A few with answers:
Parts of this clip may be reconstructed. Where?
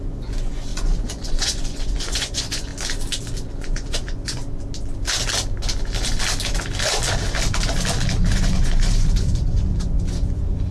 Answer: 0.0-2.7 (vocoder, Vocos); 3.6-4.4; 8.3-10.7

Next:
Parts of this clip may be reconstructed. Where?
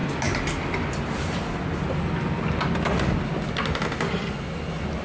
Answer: none